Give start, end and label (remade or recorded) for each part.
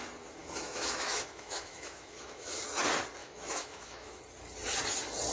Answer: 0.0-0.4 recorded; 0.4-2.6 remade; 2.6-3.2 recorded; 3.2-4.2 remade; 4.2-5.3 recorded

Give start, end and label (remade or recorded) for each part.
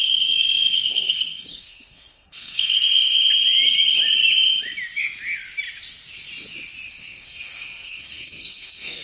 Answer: 0.0-2.7 remade; 2.7-6.9 recorded; 6.9-9.0 remade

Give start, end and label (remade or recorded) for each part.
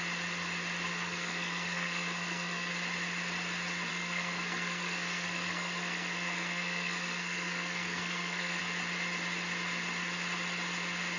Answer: 0.0-0.9 recorded; 0.9-2.7 remade; 2.7-3.9 recorded; 3.9-8.6 remade; 8.6-11.2 recorded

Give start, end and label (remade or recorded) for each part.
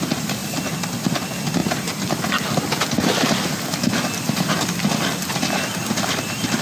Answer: 0.0-0.4 recorded; 0.4-0.9 remade; 0.9-6.6 recorded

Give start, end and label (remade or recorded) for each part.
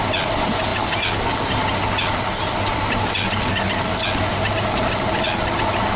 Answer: 0.0-6.0 recorded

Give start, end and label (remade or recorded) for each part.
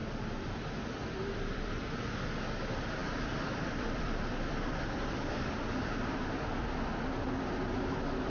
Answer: 0.0-2.0 remade; 2.0-3.0 recorded; 3.0-4.8 remade; 4.8-8.3 recorded